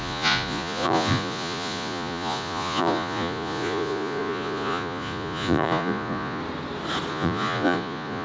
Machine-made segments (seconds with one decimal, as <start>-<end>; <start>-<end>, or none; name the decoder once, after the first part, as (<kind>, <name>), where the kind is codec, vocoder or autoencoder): 0.0-6.4 (vocoder, Vocos); 7.1-8.2

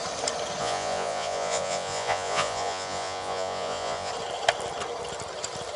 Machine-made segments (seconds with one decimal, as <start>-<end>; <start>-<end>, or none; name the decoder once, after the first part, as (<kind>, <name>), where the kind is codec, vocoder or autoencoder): 0.6-4.1 (vocoder, Vocos)

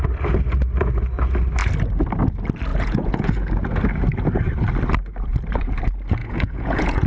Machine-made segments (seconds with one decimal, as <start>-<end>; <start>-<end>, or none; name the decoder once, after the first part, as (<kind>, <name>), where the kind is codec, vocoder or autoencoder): 2.7-3.5 (vocoder, Vocos); 6.2-7.1